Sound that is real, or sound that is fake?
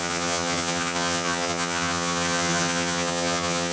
fake